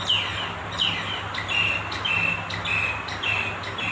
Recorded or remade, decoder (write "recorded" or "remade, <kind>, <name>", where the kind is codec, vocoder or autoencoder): recorded